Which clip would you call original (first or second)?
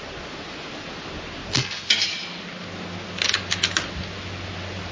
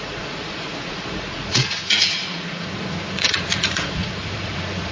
first